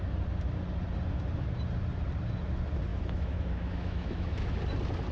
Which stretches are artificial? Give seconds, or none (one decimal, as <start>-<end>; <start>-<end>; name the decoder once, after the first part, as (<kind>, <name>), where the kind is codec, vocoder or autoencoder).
2.9-4.6 (autoencoder, DAC-VAE)